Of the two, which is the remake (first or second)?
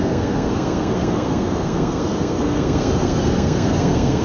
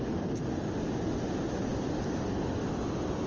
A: first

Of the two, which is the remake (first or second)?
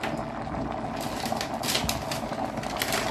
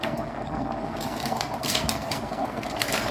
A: second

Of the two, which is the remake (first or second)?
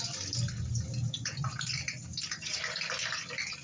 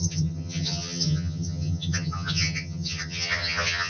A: second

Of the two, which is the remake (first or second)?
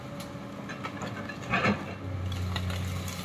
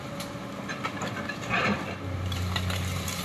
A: second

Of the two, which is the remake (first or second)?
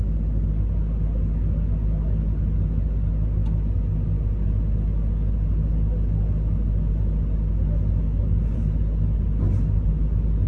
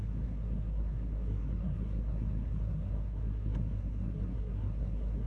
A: second